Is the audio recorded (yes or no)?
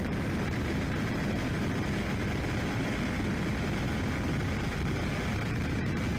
no